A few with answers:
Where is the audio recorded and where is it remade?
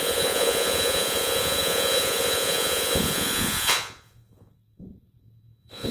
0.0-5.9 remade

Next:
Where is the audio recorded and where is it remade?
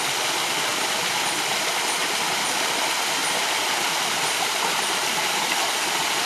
0.0-6.3 recorded